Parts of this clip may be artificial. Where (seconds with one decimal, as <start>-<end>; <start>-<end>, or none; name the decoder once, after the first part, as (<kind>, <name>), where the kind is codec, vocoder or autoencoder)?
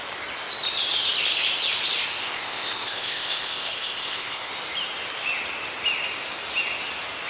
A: 2.2-4.5 (codec, ZipCodec)